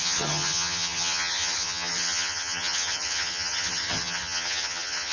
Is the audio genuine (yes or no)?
no